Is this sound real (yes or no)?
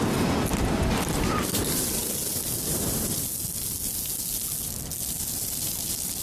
yes